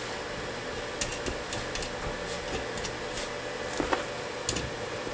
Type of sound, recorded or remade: recorded